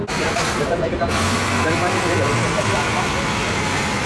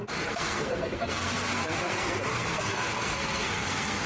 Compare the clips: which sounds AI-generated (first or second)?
second